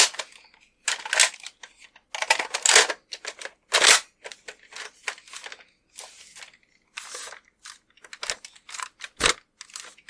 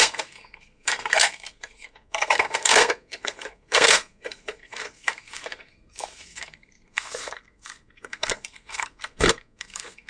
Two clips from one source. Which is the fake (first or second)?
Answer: second